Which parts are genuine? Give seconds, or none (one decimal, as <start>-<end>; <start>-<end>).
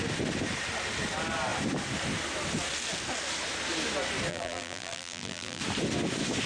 0.0-4.3; 5.6-6.5